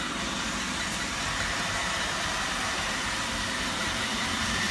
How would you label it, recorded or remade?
remade